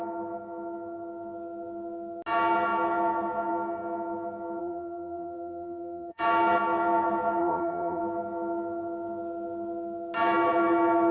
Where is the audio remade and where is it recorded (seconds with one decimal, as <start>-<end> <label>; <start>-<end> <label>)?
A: 0.0-4.6 recorded; 4.6-6.2 remade; 6.2-7.4 recorded; 7.4-8.0 remade; 8.0-11.1 recorded

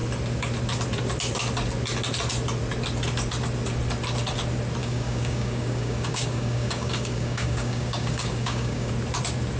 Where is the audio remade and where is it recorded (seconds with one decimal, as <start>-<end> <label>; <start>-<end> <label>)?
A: 0.0-4.8 recorded; 4.8-8.9 remade; 8.9-9.6 recorded

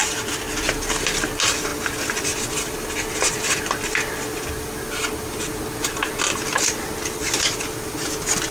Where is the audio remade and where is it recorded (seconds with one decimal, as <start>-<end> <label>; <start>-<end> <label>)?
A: 0.0-8.5 recorded

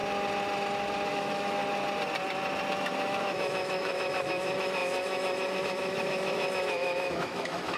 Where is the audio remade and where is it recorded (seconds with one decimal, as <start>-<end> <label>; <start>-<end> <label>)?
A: 0.0-1.1 recorded; 1.1-1.6 remade; 1.6-2.7 recorded; 2.7-7.8 remade

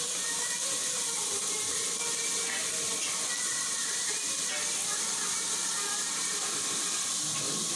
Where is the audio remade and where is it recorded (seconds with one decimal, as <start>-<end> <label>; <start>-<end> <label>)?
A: 0.0-7.8 recorded